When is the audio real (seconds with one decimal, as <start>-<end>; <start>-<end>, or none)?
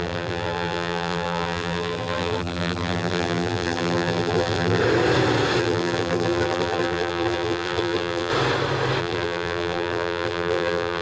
4.8-5.6; 8.3-9.0